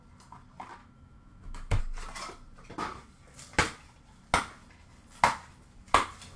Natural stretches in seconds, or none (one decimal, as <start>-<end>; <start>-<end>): 0.0-0.8; 1.8-6.4